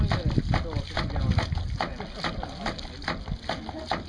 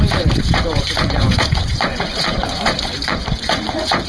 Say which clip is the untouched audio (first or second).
first